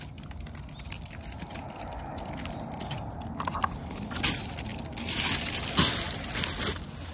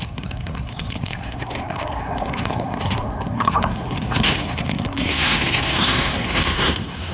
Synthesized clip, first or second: second